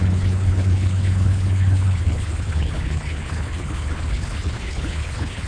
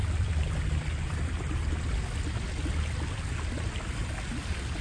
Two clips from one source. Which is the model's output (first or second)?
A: first